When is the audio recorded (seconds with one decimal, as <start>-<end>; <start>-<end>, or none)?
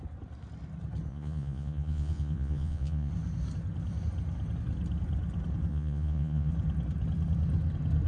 0.0-1.1; 3.1-5.7; 6.5-8.1